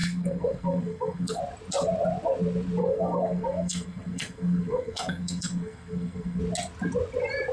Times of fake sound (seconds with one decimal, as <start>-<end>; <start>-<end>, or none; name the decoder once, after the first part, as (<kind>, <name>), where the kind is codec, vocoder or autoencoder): 0.0-1.4 (codec, SNAC); 2.8-6.4